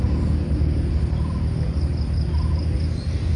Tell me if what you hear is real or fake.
real